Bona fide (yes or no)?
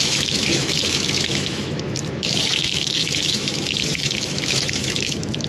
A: no